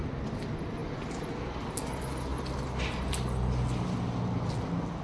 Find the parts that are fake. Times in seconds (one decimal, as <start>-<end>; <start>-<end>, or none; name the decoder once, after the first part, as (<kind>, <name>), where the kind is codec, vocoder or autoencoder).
none